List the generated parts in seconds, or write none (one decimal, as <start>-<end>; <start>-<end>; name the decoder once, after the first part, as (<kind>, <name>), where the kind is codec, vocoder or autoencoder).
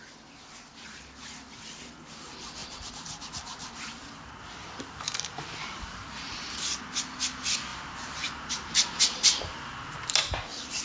2.6-6.5 (vocoder, BigVGAN v2); 7.7-10.8